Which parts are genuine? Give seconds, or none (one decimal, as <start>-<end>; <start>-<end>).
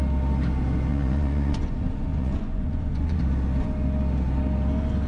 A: 0.0-0.9; 3.2-5.1